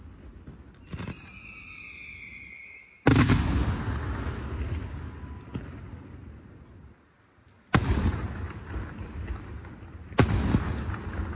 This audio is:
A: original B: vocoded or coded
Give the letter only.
A